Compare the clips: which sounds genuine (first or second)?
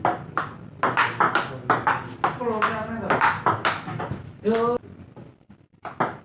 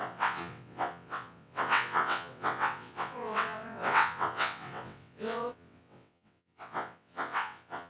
first